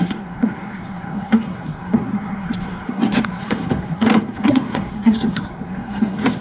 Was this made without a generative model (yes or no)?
no